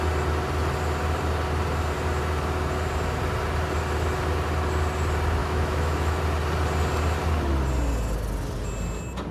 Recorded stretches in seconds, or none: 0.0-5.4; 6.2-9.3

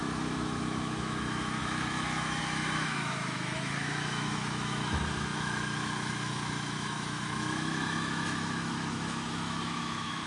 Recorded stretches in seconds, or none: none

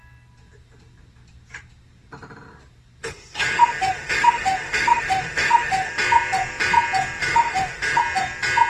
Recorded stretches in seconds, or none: 0.0-3.0; 5.9-7.2; 8.0-8.7